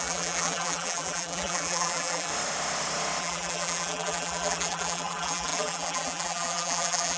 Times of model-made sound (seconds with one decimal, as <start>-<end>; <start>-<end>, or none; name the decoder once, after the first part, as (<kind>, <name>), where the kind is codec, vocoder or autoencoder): 0.0-2.3 (vocoder, BigVGAN v2); 3.2-7.2